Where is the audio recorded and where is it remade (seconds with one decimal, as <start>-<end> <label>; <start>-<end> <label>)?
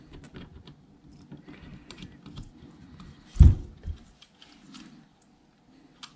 0.0-6.2 recorded